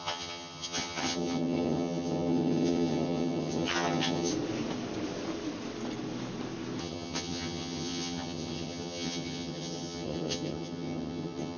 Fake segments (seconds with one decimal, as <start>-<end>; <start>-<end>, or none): 0.0-4.3; 6.8-11.6